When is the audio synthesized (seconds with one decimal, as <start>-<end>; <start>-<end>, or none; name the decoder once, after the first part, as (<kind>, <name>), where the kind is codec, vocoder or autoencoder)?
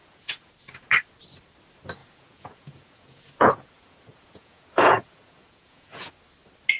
0.0-0.5 (vocoder, Vocos); 2.0-6.1